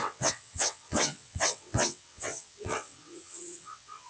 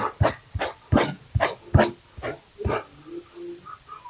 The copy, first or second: first